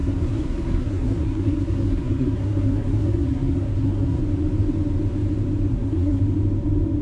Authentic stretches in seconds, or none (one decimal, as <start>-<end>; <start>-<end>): 4.2-5.7; 6.2-7.0